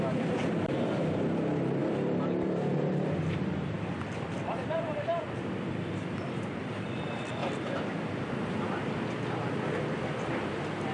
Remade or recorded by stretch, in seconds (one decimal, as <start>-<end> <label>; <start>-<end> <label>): 0.0-7.4 remade; 7.4-9.8 recorded; 9.8-10.9 remade